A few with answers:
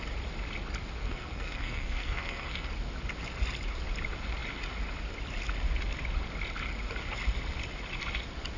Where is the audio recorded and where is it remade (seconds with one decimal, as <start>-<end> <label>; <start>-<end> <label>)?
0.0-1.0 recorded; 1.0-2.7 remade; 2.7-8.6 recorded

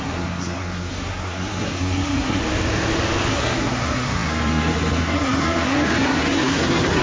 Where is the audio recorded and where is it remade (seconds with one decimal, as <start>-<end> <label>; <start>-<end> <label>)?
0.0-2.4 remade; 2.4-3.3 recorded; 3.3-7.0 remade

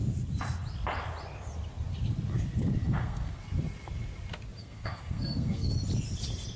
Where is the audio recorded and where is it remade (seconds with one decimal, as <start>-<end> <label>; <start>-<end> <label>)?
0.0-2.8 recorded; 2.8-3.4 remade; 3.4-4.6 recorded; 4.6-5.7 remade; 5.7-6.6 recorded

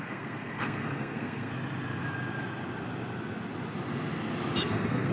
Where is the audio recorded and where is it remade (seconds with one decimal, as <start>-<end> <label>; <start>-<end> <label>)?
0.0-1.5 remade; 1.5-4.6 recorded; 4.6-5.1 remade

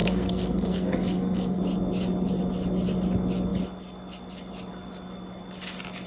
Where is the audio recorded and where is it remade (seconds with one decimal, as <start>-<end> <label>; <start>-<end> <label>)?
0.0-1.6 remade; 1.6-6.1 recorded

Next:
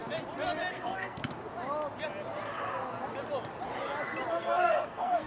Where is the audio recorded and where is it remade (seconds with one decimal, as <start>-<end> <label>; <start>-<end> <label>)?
0.0-0.7 recorded; 0.7-1.2 remade; 1.2-4.3 recorded; 4.3-5.3 remade

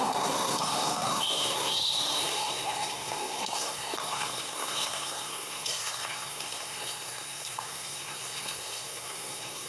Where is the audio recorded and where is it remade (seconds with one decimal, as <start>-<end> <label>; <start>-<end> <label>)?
0.0-9.7 remade